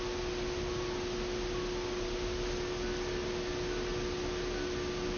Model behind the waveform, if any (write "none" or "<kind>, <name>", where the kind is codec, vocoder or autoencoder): none